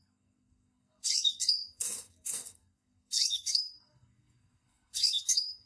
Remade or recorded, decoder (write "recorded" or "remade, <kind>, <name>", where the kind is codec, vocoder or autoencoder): remade, codec, SNAC